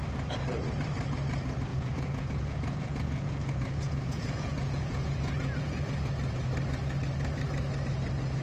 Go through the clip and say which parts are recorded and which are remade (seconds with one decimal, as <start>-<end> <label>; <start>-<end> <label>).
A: 0.0-1.7 recorded; 1.7-6.1 remade; 6.1-8.4 recorded